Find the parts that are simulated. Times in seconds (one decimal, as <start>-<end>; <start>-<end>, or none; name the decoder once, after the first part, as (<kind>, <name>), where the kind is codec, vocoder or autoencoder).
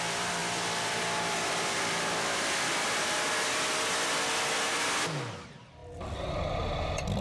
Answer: none